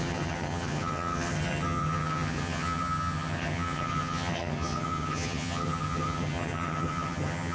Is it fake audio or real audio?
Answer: fake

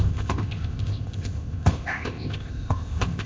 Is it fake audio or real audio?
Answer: fake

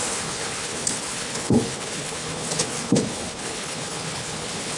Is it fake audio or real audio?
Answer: fake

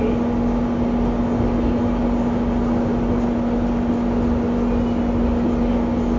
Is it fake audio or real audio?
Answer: real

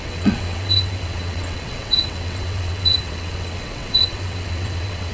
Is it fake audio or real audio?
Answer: fake